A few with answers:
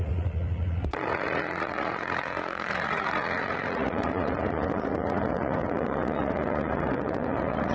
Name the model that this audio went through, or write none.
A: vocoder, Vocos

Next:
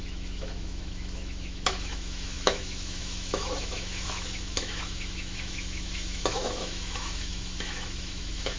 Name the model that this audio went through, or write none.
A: autoencoder, DAC-VAE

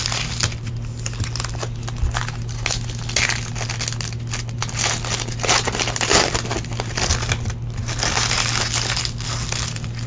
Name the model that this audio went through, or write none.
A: none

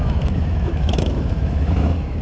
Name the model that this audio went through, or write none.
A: autoencoder, DAC-VAE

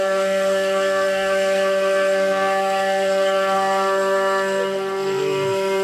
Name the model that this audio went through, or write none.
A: codec, SNAC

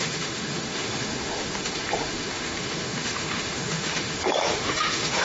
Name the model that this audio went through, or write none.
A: autoencoder, DAC-VAE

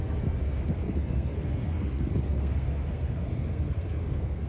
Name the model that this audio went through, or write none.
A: codec, SNAC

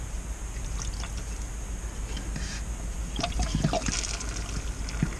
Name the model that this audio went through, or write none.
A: none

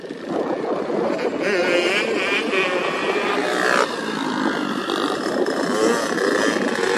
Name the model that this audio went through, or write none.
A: vocoder, BigVGAN v2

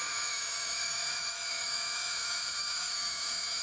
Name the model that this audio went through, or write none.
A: autoencoder, DAC-VAE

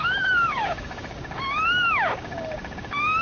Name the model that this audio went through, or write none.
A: codec, DAC